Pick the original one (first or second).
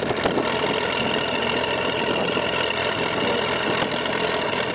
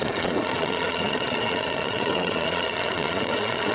first